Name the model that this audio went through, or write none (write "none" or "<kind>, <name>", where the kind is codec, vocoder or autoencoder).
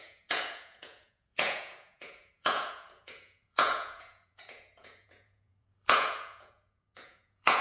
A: vocoder, Vocos